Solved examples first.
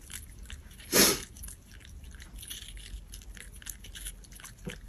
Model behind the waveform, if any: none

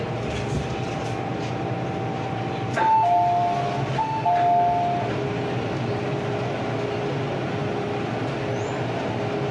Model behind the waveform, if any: none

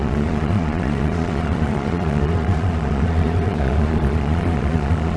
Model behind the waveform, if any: vocoder, Vocos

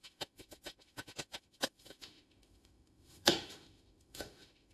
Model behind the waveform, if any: autoencoder, DAC-VAE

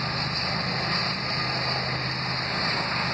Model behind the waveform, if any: none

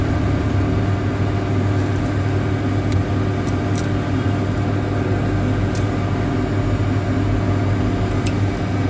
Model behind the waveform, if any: none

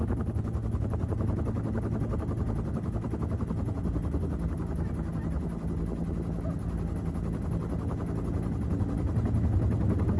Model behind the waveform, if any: none